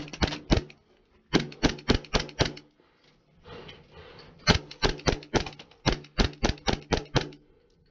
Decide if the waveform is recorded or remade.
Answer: recorded